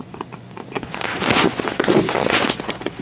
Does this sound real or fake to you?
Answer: fake